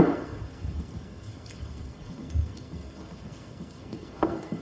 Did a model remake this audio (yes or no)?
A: yes